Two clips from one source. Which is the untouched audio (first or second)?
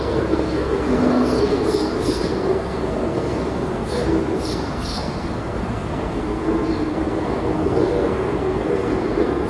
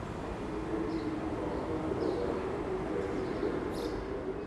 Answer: second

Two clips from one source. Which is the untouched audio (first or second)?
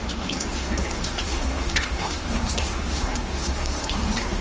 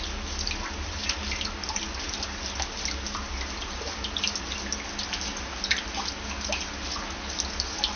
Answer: second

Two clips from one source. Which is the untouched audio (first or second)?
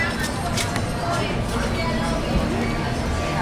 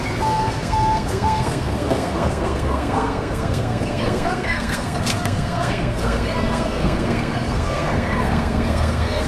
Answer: first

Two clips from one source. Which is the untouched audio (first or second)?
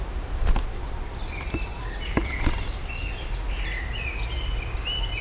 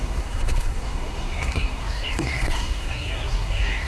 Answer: first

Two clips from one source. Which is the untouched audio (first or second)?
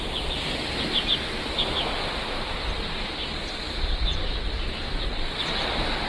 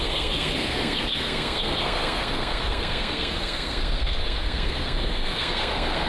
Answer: first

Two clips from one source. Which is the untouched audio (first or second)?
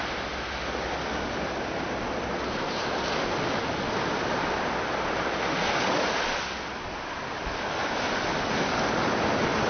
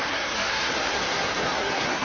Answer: first